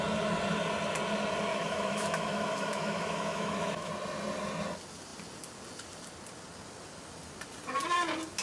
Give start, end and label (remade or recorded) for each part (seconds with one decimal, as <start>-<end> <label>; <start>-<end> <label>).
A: 0.0-1.5 recorded; 1.5-3.9 remade; 3.9-8.4 recorded